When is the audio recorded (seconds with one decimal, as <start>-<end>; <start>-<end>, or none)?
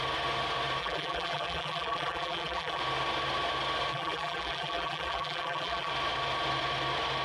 0.0-0.8; 2.8-3.9; 5.9-7.2